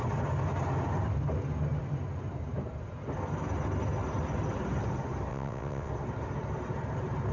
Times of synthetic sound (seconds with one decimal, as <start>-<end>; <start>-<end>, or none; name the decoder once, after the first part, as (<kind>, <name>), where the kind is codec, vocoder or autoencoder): 5.3-5.9 (vocoder, WaveNeXt)